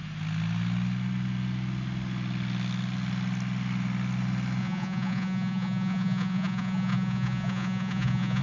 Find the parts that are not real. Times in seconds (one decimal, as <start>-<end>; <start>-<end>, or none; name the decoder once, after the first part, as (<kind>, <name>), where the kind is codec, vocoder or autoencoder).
4.6-8.4 (vocoder, Vocos)